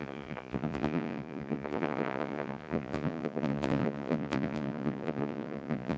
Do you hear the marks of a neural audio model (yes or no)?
yes